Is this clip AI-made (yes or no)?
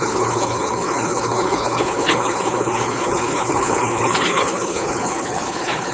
yes